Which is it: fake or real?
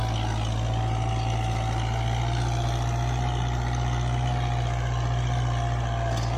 real